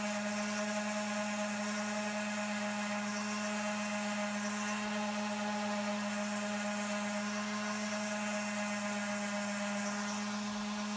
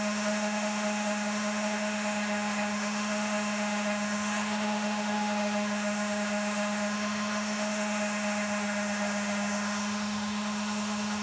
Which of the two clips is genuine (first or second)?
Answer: first